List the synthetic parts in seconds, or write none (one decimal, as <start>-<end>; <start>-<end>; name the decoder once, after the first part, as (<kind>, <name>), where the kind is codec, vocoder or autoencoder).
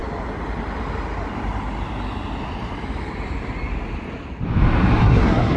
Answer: 5.0-5.6 (codec, SNAC)